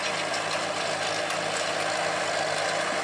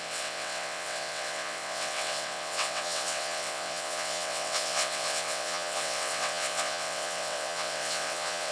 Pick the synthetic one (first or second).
second